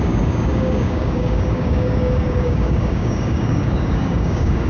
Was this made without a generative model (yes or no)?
no